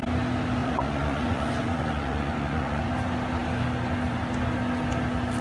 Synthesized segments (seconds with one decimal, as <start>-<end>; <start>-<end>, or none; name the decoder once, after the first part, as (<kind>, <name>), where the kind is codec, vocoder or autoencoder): 0.6-2.9 (vocoder, Vocos)